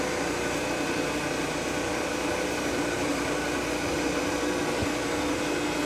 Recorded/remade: recorded